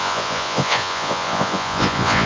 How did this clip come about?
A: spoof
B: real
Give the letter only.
A